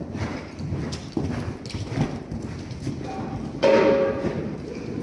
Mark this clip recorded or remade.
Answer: recorded